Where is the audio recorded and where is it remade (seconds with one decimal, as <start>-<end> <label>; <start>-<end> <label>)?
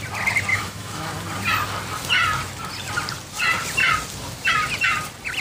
0.0-0.5 recorded; 0.5-1.1 remade; 1.1-5.4 recorded